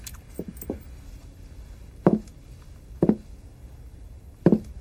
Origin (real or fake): real